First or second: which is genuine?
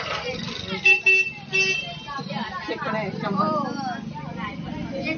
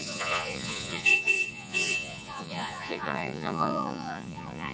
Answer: first